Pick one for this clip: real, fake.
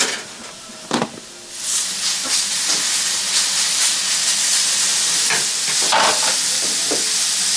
real